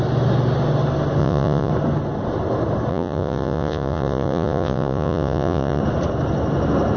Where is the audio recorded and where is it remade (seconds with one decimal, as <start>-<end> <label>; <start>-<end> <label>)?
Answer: 0.0-1.2 recorded; 1.2-1.7 remade; 1.7-2.9 recorded; 2.9-5.8 remade; 5.8-7.0 recorded